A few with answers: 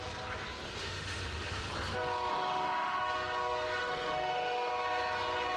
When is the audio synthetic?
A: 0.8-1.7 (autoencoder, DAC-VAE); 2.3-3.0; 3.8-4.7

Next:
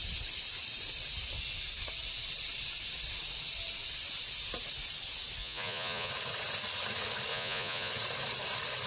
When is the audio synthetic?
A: 5.4-6.1 (vocoder, Vocos); 7.3-7.9

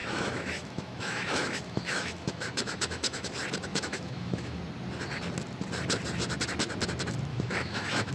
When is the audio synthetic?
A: 0.0-3.3 (autoencoder, DAC-VAE); 3.7-4.6; 7.3-8.1

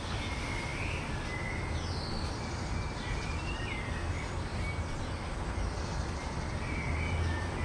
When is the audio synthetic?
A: none

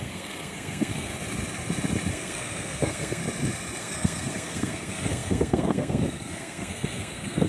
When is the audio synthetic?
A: 0.0-1.1 (codec, SNAC); 2.1-3.2; 3.8-7.5

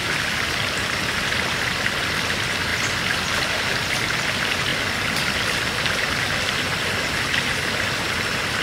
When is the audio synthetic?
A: none

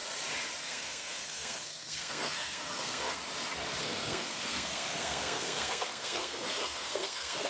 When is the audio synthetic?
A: 0.6-3.2 (codec, SNAC); 3.8-7.5